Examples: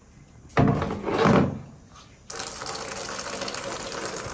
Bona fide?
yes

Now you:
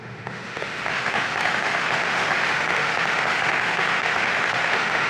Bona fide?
no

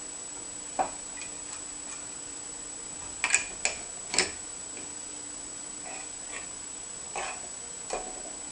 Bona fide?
yes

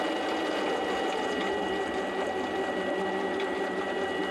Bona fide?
yes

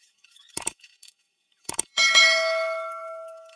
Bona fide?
no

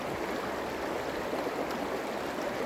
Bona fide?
yes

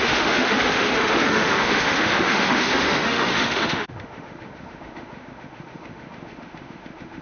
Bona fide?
no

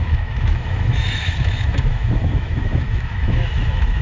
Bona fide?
no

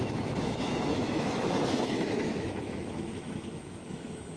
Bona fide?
no